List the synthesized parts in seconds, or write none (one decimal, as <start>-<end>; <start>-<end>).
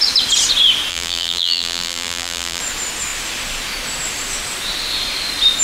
0.9-2.6